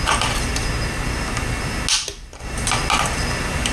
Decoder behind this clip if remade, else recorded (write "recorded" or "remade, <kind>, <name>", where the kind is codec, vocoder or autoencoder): recorded